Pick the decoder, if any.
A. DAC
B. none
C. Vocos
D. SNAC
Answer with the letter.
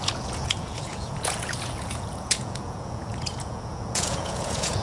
C